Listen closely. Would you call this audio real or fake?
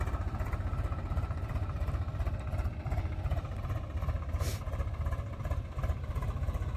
fake